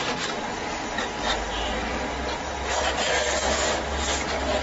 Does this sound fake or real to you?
real